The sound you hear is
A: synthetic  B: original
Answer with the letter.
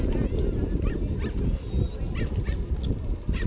B